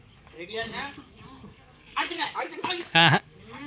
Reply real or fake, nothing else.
fake